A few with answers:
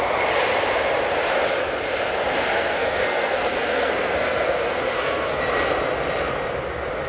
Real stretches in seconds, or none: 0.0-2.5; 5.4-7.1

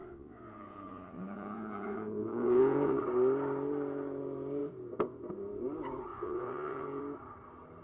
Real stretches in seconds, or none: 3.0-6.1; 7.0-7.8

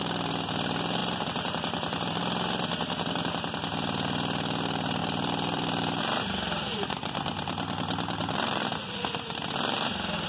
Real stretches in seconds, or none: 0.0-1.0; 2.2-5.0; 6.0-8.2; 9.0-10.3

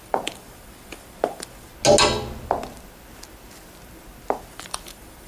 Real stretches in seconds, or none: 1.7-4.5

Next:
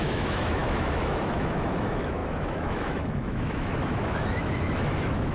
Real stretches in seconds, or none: none

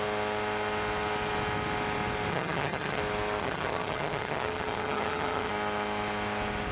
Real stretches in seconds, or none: 0.0-2.3; 3.0-3.4; 5.5-6.7

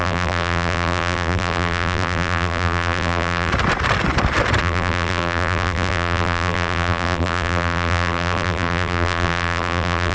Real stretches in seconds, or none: 3.5-4.6

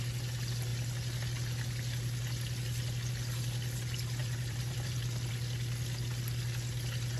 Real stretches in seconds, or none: 0.0-4.2; 5.3-7.2